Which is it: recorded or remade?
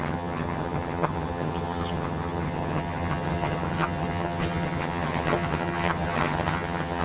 remade